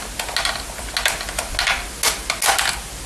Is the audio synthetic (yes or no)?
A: no